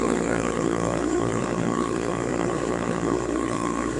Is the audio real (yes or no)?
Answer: no